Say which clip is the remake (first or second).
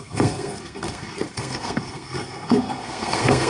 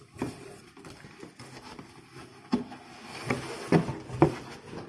first